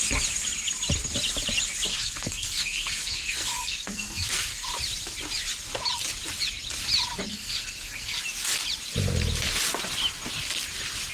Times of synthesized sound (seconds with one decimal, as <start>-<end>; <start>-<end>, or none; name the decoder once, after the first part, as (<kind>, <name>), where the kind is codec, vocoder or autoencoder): 1.9-4.7 (codec, SNAC); 7.3-8.2